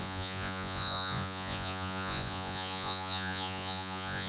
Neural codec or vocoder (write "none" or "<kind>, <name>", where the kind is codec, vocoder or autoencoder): vocoder, Vocos